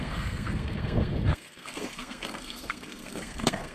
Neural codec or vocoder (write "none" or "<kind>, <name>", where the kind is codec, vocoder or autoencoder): codec, SNAC